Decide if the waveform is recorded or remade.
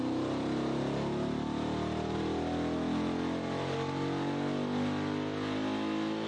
recorded